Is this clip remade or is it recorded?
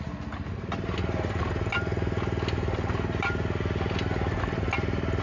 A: recorded